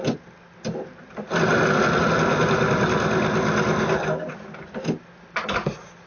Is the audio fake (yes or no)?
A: no